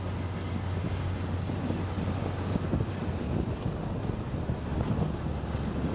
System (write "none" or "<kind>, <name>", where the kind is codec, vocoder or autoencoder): none